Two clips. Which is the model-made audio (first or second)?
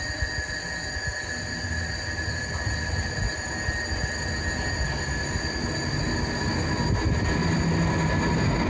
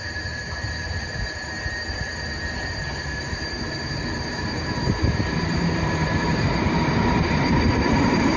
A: second